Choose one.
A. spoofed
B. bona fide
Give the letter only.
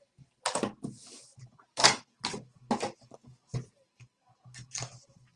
B